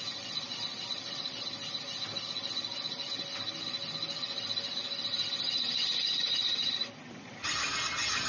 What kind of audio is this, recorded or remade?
recorded